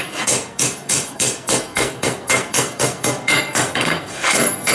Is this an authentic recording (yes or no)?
no